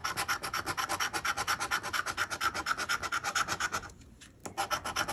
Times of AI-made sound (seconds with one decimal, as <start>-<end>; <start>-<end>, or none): 3.1-4.4